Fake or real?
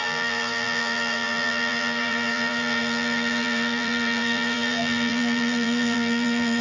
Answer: fake